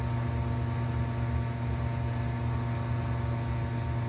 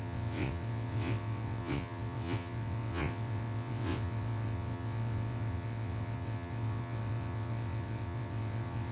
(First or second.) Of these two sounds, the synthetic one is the second